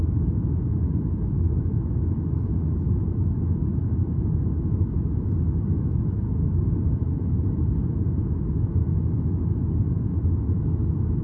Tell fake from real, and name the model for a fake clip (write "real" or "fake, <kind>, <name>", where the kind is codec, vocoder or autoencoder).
fake, autoencoder, DAC-VAE